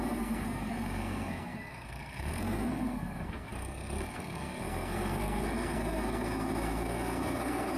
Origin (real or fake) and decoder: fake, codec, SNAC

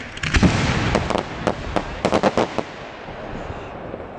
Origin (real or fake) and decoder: real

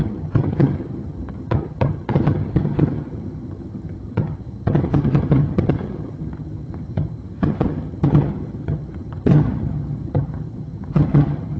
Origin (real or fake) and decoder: fake, vocoder, HiFi-GAN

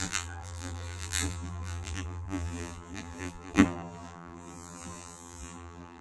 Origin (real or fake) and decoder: fake, vocoder, BigVGAN v2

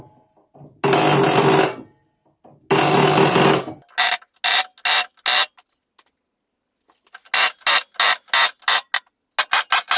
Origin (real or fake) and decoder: real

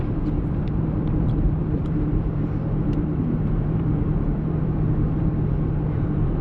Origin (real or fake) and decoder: fake, vocoder, BigVGAN v2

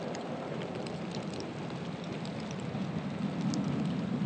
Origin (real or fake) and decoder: real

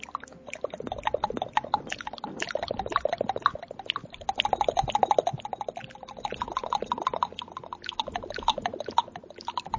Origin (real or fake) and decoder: real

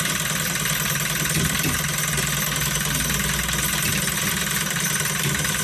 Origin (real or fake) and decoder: real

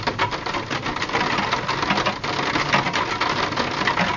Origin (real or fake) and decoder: real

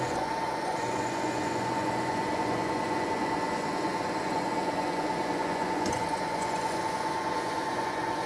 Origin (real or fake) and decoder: fake, vocoder, Vocos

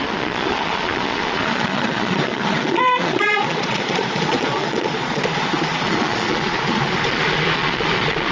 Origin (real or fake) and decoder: fake, vocoder, Vocos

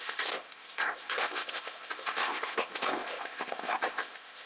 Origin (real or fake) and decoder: fake, codec, ZipCodec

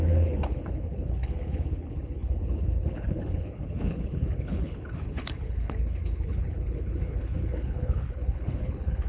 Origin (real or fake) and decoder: fake, codec, HILCodec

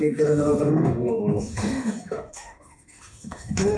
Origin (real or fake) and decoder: fake, autoencoder, DAC-VAE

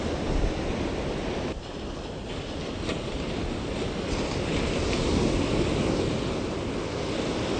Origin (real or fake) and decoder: real